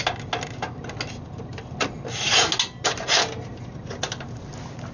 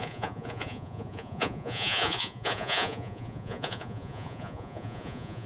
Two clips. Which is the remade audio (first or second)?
second